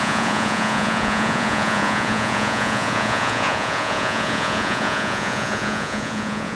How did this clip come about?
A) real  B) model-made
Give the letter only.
B